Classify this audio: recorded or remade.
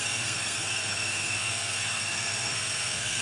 remade